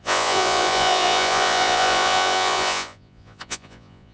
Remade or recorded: remade